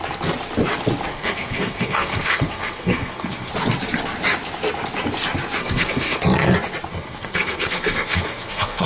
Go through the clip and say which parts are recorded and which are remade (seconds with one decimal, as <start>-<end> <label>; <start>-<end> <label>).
0.0-1.1 recorded; 1.1-3.5 remade; 3.5-5.6 recorded; 5.6-6.2 remade; 6.2-6.9 recorded; 6.9-8.9 remade